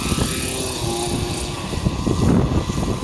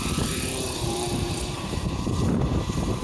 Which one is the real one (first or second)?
first